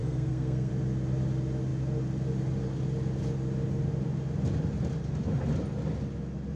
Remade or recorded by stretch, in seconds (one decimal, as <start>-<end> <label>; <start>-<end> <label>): 0.0-0.7 remade; 0.7-6.6 recorded